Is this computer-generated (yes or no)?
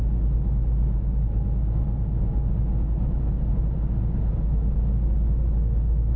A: no